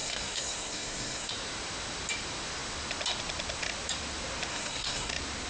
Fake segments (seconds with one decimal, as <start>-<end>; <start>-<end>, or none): 0.0-1.3; 4.5-5.1